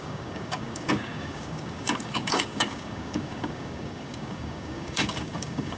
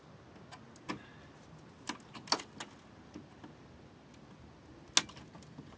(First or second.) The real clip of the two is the second